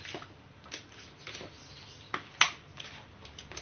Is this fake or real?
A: real